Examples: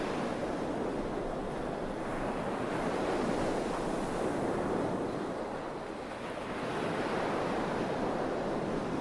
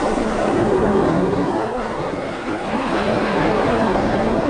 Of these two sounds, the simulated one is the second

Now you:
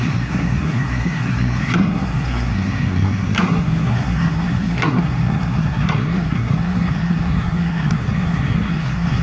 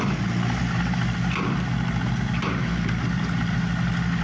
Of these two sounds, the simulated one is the first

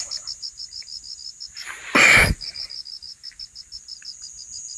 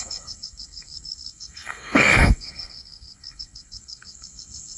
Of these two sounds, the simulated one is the second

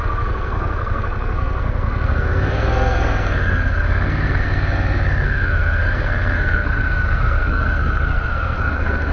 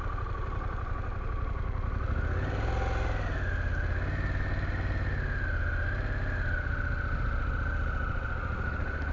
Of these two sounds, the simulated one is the first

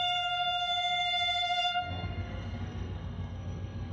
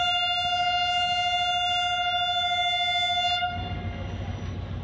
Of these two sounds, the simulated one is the first